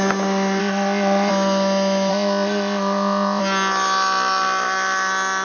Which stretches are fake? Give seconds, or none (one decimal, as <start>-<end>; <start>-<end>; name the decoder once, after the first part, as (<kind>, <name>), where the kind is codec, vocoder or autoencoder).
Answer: 0.6-1.3 (codec, ZipCodec); 2.1-3.4